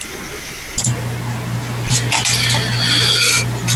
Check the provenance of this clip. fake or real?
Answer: real